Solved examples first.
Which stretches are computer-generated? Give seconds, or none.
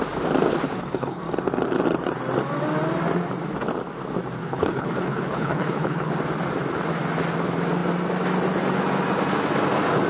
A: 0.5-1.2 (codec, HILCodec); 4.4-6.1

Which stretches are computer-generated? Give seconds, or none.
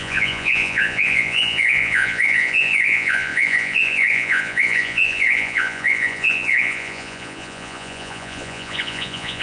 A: 0.0-9.4 (vocoder, Vocos)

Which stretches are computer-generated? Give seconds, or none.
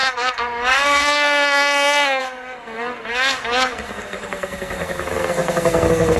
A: 0.0-6.2 (codec, SNAC)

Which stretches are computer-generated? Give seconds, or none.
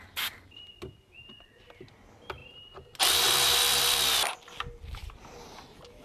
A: none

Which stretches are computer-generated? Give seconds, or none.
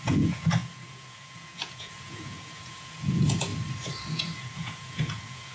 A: 0.0-3.5 (vocoder, Vocos); 4.1-5.5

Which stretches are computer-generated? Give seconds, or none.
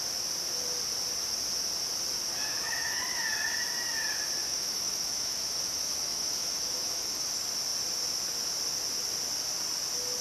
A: 2.5-3.2 (autoencoder, DAC-VAE); 4.4-7.3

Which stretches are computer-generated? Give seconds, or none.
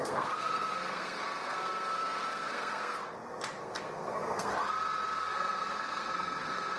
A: 0.0-3.0 (codec, SNAC); 3.6-4.5; 5.2-6.8